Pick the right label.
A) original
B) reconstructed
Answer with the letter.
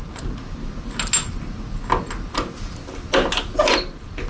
A